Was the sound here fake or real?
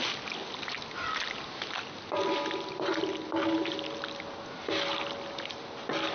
real